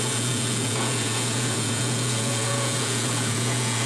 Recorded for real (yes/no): no